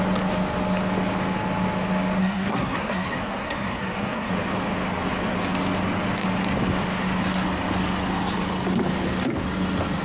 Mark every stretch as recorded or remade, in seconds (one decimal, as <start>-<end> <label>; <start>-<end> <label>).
0.0-2.2 recorded; 2.2-4.3 remade; 4.3-10.0 recorded